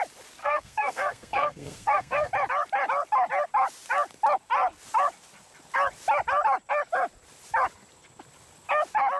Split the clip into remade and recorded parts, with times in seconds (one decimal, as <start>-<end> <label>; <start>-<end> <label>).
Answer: 0.0-0.4 recorded; 0.4-2.3 remade; 2.3-9.2 recorded